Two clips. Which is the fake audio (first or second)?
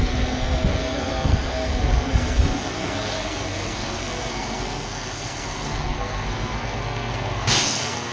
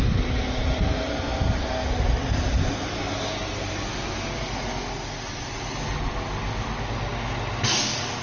first